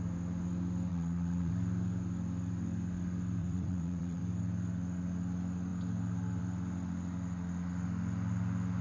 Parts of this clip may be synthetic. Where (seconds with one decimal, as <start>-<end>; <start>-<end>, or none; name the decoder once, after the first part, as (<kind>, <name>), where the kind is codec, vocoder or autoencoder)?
0.9-1.5 (vocoder, WaveNeXt); 3.4-4.2